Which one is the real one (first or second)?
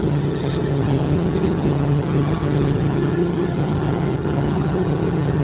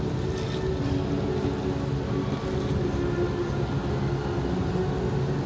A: second